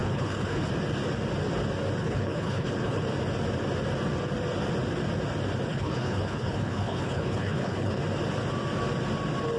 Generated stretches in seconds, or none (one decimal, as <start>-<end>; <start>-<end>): 0.0-0.7; 2.0-3.0; 5.7-8.0